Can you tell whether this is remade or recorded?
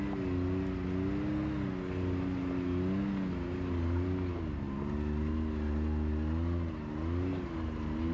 recorded